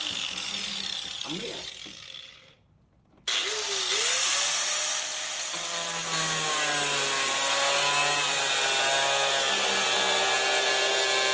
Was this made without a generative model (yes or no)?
yes